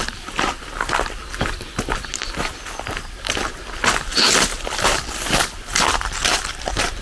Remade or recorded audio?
recorded